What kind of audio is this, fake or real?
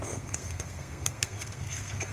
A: fake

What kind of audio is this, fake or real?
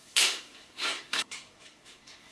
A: fake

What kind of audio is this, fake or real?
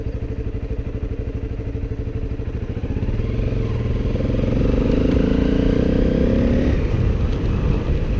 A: real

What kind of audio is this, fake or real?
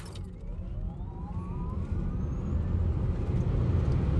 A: real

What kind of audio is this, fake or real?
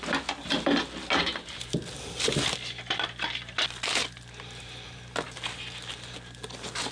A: real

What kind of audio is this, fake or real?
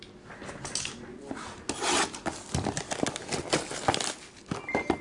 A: real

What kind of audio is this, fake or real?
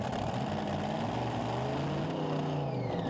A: real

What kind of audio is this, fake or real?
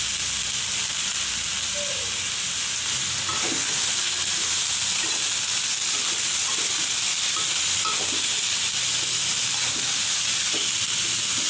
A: real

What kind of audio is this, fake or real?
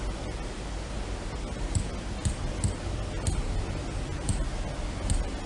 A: real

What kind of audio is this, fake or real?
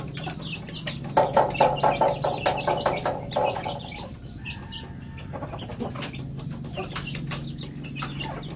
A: real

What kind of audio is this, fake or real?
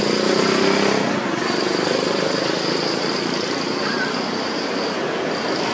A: real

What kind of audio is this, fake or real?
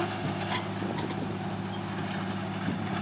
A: real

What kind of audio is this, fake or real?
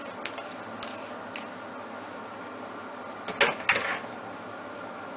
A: real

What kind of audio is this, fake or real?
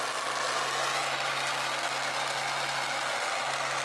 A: real